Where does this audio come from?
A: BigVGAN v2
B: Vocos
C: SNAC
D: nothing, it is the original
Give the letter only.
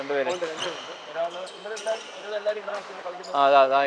D